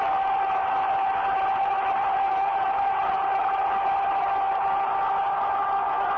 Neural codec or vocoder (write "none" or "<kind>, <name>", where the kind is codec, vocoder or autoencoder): none